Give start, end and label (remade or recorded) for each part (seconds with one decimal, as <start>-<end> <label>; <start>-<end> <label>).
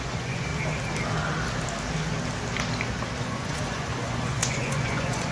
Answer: 0.0-0.5 remade; 0.5-3.2 recorded; 3.2-5.3 remade